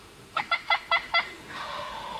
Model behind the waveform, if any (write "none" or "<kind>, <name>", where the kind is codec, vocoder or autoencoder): autoencoder, DAC-VAE